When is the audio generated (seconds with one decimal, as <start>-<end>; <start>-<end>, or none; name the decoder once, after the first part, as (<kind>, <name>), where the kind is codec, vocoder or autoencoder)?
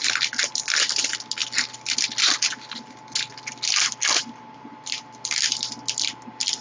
none